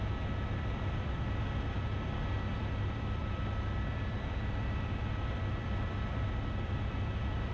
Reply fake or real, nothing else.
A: fake